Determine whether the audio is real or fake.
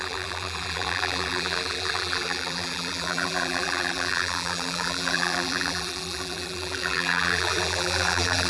fake